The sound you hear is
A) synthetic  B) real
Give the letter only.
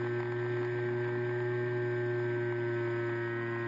B